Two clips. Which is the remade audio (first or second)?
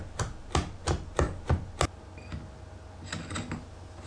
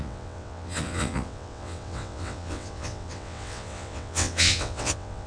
second